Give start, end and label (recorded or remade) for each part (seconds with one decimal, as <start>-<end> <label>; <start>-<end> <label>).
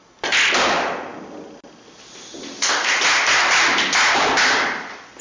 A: 0.0-5.2 recorded